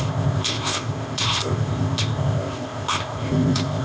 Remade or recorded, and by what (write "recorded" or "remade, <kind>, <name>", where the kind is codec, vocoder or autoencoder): remade, codec, ZipCodec